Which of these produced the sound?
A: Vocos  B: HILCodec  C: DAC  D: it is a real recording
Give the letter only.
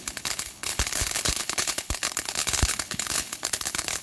B